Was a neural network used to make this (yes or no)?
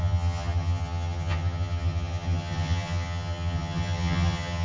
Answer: yes